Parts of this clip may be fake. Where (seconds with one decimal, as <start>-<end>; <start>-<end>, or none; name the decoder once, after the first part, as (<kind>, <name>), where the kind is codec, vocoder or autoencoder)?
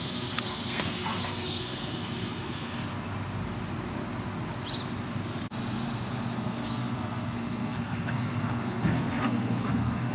0.0-2.8 (codec, SNAC); 6.4-10.1